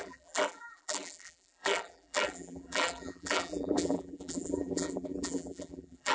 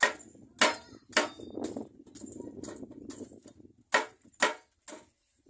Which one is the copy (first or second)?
first